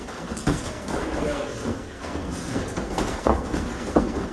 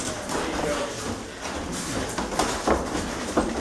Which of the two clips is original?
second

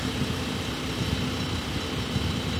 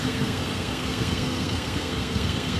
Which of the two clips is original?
first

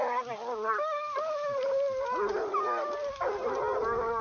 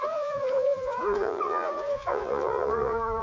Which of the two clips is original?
first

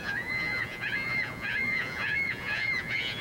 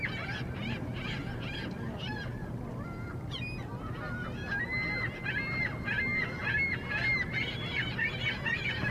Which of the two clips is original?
second